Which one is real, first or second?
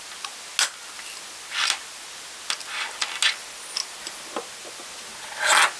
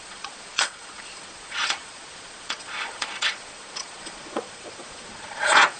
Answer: first